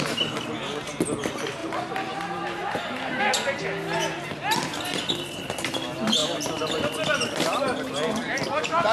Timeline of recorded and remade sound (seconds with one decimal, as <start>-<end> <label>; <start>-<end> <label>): 0.0-8.9 recorded